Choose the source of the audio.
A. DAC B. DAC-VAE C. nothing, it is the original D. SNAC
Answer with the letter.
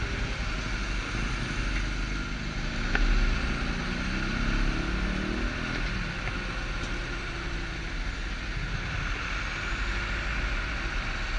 C